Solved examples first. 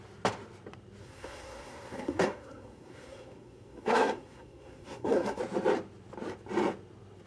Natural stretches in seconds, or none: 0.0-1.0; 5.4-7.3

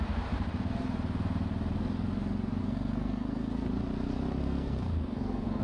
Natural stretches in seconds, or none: 0.0-2.6; 3.7-4.4

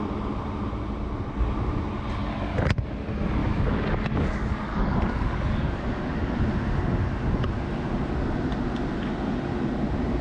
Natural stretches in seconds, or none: 0.0-3.4; 6.4-10.2

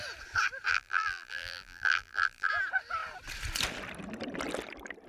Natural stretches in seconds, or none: 0.0-0.7; 2.5-5.1

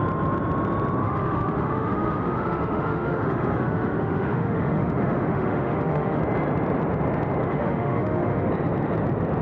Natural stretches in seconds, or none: 0.0-1.0; 6.2-7.4; 8.5-9.4